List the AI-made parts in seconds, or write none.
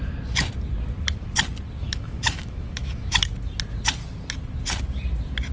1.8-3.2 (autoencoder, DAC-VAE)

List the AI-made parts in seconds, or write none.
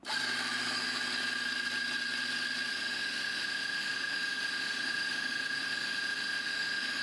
2.7-7.0 (autoencoder, DAC-VAE)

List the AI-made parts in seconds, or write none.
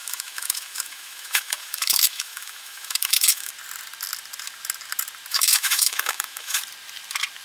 0.0-3.5 (autoencoder, DAC-VAE); 5.3-6.6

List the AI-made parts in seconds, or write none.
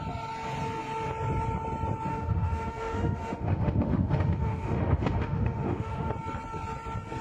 2.1-6.1 (autoencoder, DAC-VAE)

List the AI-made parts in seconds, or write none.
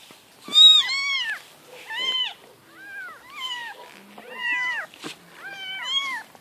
none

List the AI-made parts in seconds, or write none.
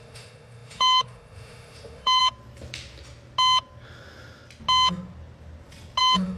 0.0-2.2 (autoencoder, DAC-VAE); 6.0-6.4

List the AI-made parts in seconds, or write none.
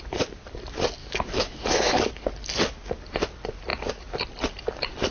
1.0-1.9 (autoencoder, DAC-VAE)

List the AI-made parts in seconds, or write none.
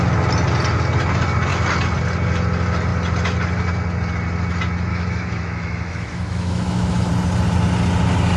4.9-7.1 (autoencoder, DAC-VAE)